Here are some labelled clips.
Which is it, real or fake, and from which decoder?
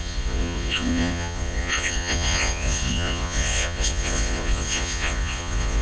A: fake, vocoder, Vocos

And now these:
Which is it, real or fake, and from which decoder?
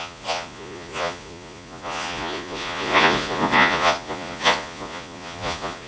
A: fake, vocoder, Vocos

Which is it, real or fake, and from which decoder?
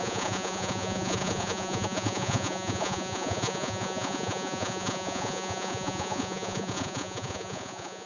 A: fake, vocoder, Vocos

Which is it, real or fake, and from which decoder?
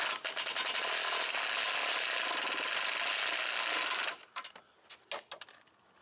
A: real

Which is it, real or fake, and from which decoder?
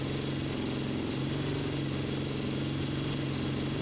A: real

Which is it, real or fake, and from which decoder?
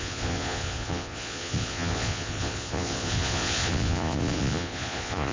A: fake, vocoder, Vocos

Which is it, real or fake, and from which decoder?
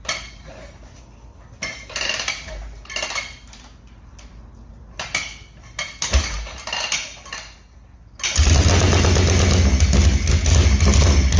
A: real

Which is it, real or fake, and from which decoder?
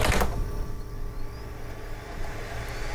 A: real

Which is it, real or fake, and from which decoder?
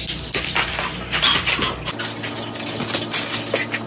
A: real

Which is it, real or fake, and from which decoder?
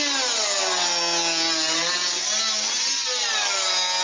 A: real